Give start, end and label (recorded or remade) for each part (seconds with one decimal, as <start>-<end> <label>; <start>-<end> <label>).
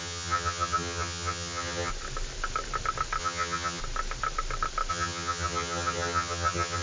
0.0-1.9 remade; 1.9-3.2 recorded; 3.2-3.8 remade; 3.8-4.9 recorded; 4.9-6.8 remade